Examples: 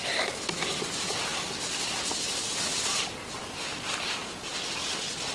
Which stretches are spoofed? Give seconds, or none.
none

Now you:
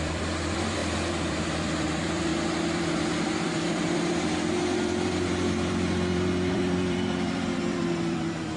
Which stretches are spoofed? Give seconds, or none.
0.0-8.6 (vocoder, BigVGAN v2)

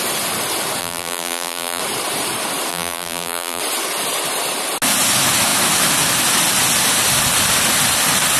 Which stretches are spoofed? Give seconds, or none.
0.8-1.8 (vocoder, BigVGAN v2); 2.7-3.6

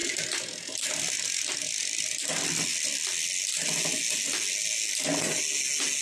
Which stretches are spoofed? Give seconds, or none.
none

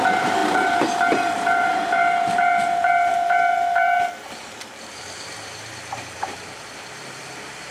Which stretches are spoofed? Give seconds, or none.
0.0-7.7 (vocoder, BigVGAN v2)